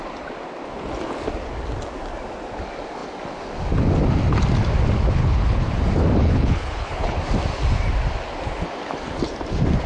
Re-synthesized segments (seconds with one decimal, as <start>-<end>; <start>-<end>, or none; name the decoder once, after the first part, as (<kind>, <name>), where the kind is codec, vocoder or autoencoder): 5.2-5.7 (codec, HILCodec); 6.2-7.2